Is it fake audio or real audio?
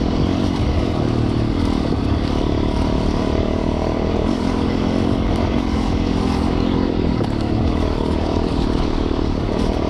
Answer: fake